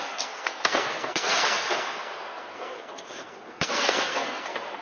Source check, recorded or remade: remade